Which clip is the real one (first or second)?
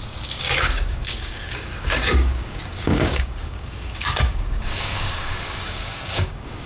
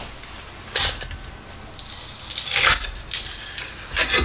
second